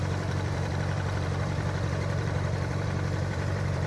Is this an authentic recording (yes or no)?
no